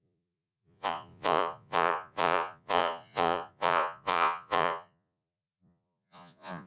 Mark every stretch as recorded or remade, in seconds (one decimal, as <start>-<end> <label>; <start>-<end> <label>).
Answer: 0.0-6.7 remade